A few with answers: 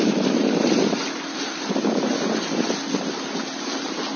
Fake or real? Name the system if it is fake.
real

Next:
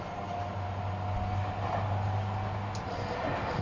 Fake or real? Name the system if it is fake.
real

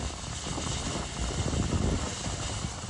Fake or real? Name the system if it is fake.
real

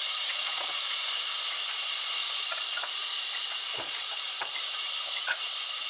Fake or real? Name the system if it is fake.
fake, vocoder, Vocos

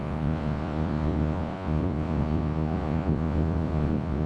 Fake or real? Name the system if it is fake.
fake, vocoder, Vocos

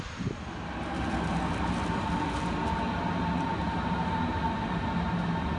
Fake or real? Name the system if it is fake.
real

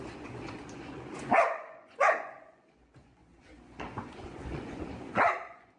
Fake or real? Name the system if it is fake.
fake, vocoder, Vocos